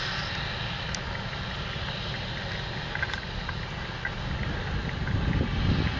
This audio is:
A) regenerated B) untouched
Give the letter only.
B